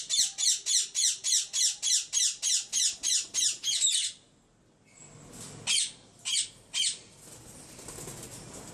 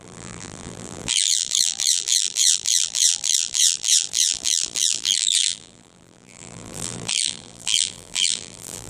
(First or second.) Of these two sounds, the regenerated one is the second